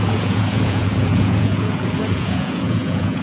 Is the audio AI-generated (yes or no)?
yes